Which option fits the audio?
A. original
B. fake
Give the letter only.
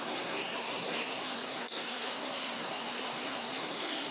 B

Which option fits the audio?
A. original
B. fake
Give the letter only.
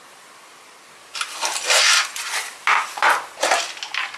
A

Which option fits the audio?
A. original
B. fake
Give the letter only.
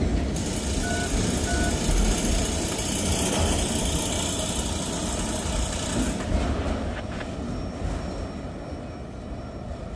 A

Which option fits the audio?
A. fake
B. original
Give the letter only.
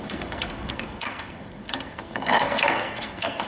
A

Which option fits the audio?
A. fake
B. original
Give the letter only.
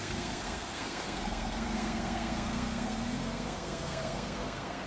A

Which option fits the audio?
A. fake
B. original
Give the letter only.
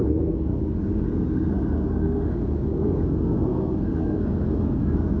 A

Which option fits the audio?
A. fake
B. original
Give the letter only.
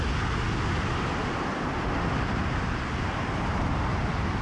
B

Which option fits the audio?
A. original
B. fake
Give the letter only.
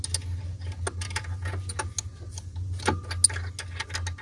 A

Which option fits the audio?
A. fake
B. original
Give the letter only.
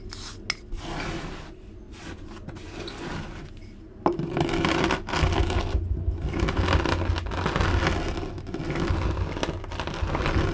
B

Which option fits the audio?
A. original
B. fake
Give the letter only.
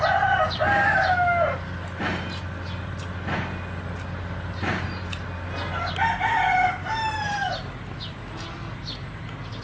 A